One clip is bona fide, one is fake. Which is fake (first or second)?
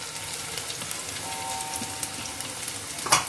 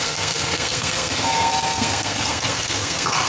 second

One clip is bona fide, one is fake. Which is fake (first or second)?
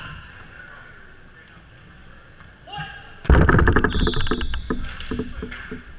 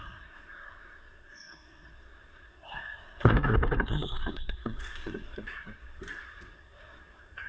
second